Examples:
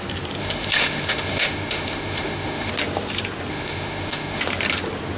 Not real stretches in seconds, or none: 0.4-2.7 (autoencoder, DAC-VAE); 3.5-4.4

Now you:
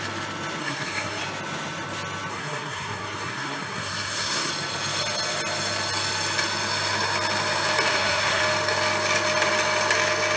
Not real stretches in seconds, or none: 0.6-1.2 (codec, SNAC); 2.3-4.5; 7.9-8.4

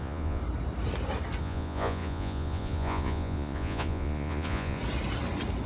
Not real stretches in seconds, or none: 0.0-0.4 (vocoder, Vocos); 1.4-4.8